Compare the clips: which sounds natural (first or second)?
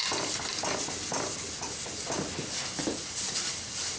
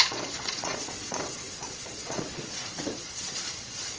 first